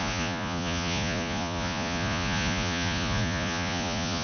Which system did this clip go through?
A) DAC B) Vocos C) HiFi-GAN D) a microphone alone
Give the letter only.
B